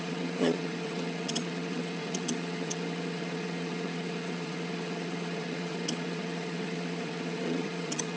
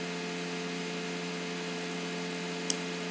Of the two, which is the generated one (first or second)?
first